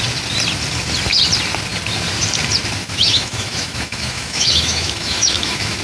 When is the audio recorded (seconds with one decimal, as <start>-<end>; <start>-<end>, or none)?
0.0-2.8